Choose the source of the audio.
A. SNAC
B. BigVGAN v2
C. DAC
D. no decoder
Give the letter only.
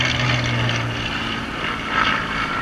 D